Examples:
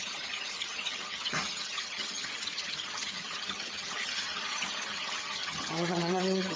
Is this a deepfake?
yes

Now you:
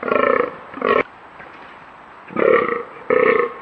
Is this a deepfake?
no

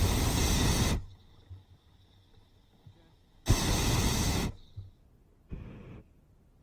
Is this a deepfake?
no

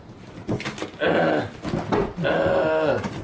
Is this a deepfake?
no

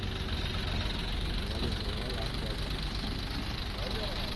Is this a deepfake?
no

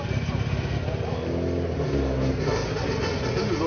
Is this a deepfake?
no